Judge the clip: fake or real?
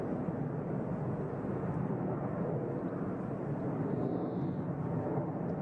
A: real